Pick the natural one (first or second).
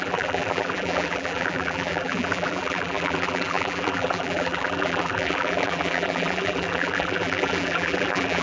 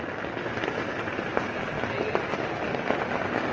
second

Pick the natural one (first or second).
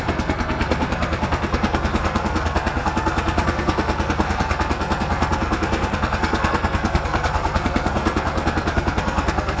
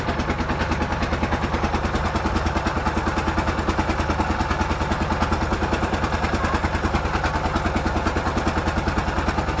second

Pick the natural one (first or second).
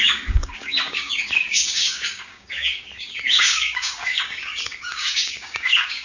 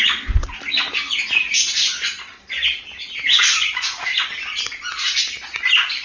second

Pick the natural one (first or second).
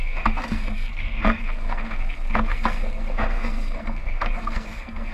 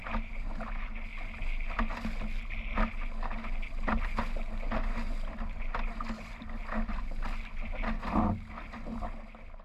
second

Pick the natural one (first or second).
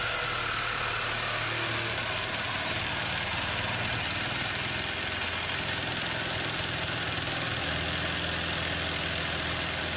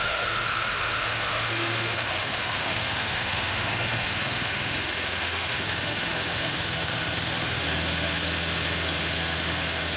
first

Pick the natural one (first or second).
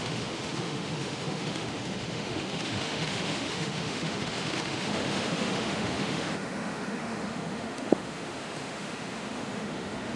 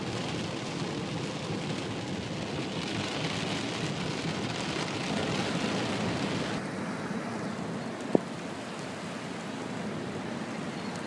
second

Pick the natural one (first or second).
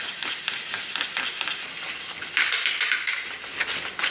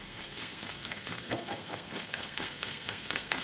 first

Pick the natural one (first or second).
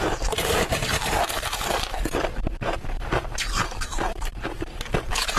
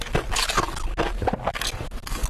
second